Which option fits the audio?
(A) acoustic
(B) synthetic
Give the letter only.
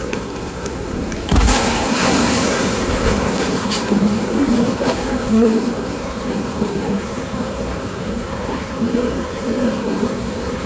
B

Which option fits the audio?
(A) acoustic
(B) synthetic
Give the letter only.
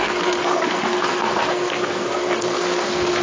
B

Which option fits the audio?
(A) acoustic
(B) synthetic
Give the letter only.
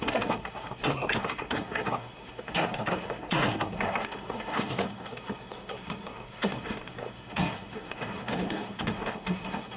B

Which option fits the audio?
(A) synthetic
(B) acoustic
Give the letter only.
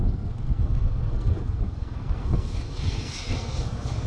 A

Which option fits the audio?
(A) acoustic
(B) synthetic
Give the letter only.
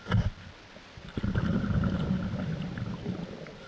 A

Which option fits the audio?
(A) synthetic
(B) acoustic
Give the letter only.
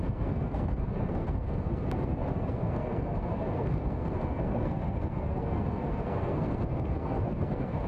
A